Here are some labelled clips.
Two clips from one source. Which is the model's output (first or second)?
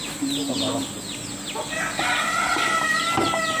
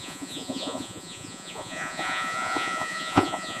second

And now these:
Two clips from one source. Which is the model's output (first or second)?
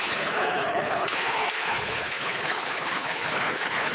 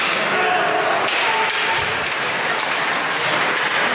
first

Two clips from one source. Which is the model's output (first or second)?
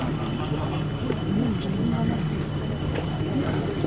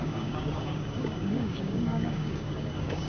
second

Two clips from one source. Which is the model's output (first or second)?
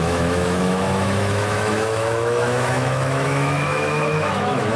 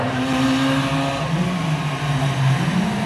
first